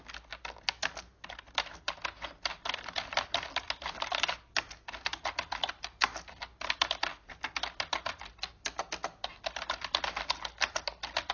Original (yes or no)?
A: yes